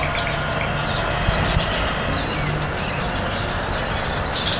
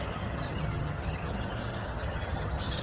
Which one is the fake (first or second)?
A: second